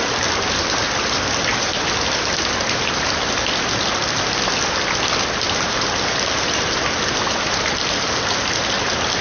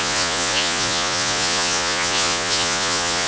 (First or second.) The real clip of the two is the first